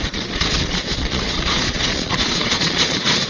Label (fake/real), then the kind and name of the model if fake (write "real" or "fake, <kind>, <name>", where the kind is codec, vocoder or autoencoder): fake, vocoder, Vocos